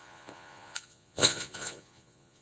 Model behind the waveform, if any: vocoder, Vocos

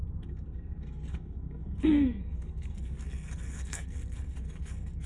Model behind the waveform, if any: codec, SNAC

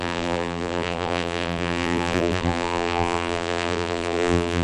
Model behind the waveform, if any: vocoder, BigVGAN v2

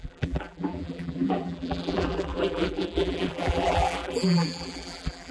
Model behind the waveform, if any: vocoder, BigVGAN v2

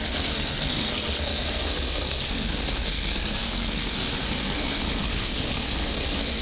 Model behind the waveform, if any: codec, SNAC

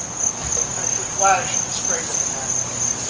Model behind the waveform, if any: none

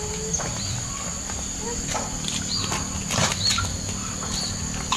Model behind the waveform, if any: none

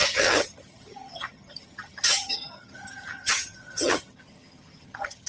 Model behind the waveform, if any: vocoder, HiFi-GAN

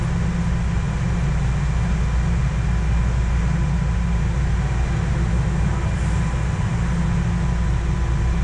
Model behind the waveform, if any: none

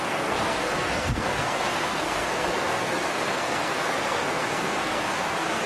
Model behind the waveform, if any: codec, SNAC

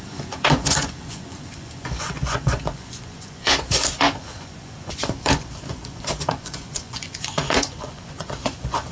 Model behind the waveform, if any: vocoder, Vocos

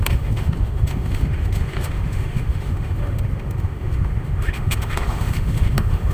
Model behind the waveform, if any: autoencoder, DAC-VAE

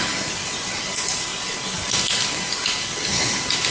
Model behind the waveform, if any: none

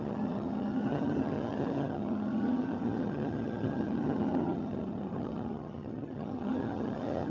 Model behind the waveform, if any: vocoder, HiFi-GAN